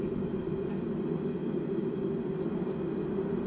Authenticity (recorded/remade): recorded